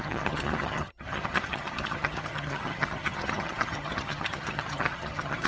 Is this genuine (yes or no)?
no